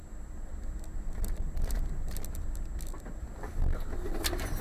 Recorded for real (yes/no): yes